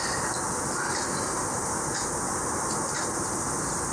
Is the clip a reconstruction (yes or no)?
no